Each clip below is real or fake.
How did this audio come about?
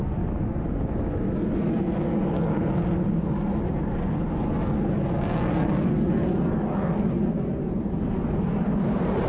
real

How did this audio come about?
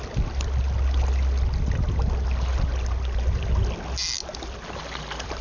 real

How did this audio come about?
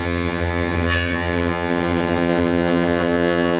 fake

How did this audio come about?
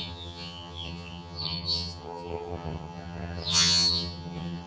fake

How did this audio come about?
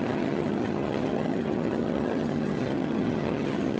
fake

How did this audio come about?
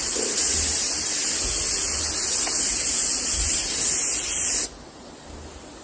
real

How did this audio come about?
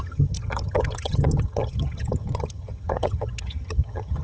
fake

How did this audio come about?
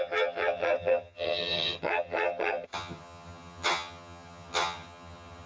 fake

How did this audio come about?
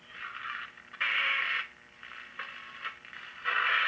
real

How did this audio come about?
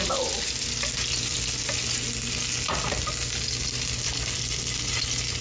real